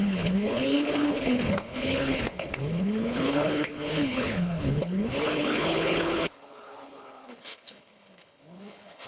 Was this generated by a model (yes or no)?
yes